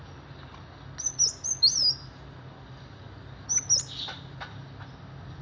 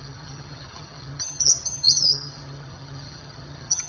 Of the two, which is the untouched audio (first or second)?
first